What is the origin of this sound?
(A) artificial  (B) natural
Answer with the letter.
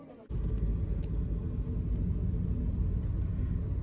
B